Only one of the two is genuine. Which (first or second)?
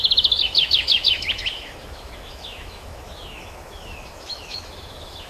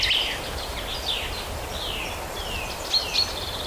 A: second